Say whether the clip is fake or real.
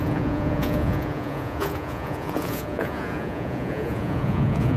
fake